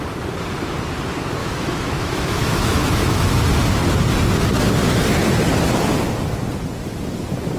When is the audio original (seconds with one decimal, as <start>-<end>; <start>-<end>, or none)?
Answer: 0.0-1.4; 3.4-7.6